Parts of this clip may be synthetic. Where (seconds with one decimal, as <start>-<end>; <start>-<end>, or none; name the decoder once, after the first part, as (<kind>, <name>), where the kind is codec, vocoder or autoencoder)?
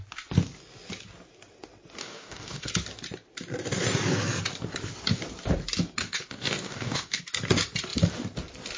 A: 2.0-2.7 (codec, DAC); 6.0-7.2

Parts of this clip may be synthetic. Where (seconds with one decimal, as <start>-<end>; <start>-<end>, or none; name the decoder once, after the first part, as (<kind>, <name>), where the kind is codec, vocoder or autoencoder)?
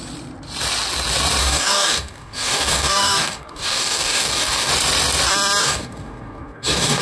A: 1.4-4.7 (codec, DAC); 5.6-7.0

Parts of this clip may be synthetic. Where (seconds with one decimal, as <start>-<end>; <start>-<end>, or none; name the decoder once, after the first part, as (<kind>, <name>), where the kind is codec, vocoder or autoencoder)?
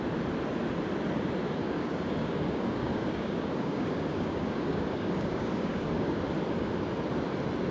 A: 1.6-6.2 (codec, DAC)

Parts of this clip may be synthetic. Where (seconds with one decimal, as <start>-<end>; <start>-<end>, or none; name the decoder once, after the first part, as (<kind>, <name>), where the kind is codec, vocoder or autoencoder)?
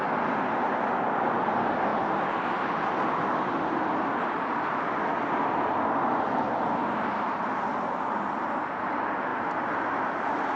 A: none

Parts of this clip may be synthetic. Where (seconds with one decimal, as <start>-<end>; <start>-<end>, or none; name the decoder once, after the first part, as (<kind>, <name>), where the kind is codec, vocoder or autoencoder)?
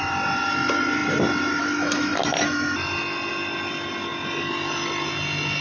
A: none